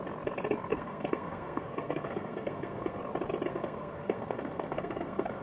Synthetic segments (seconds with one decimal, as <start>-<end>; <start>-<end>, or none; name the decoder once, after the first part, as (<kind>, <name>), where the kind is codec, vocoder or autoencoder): 0.7-3.0 (codec, SNAC); 3.5-5.4